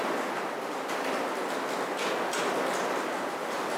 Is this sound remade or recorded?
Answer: recorded